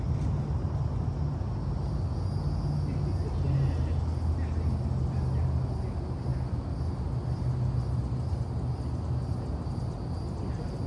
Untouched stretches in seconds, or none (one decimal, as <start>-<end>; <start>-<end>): 0.0-10.9